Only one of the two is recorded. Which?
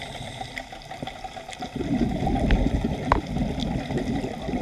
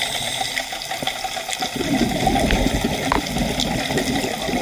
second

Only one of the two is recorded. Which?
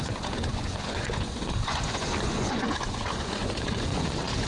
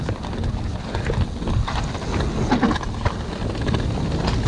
second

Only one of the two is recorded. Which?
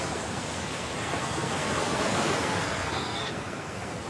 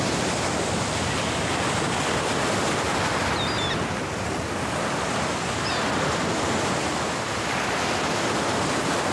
second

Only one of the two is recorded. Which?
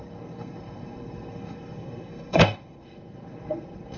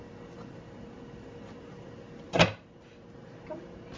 second